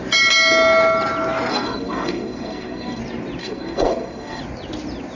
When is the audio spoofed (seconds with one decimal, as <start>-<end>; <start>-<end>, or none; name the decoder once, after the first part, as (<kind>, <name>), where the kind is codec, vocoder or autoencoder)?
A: 1.5-3.0 (codec, SNAC); 3.4-4.4